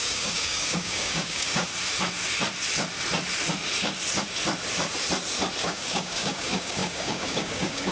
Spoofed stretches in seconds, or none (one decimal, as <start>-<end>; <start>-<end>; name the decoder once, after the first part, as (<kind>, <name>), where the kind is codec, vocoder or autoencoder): 0.0-1.7 (codec, DAC); 5.6-7.9